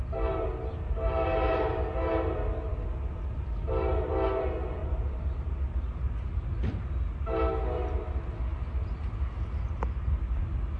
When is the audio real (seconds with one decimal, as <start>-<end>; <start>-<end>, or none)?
0.0-4.8; 5.6-10.8